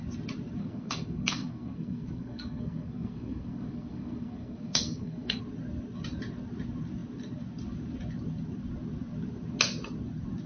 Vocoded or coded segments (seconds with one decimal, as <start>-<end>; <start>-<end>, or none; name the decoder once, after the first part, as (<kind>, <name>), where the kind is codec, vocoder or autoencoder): 0.6-5.4 (codec, SNAC)